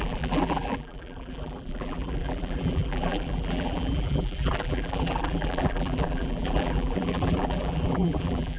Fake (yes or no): yes